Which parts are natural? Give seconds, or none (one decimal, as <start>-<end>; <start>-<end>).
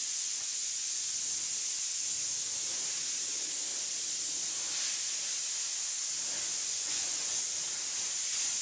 1.2-6.5; 7.6-8.6